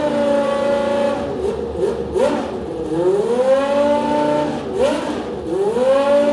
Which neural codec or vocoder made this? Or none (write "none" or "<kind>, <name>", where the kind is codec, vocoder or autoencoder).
none